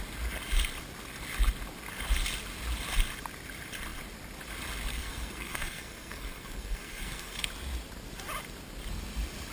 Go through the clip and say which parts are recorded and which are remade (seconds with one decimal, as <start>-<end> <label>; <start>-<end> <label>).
0.0-4.9 recorded; 4.9-7.5 remade; 7.5-9.5 recorded